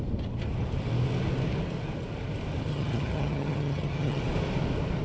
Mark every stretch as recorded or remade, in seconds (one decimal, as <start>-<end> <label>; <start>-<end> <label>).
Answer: 0.0-2.7 recorded; 2.7-4.2 remade; 4.2-5.0 recorded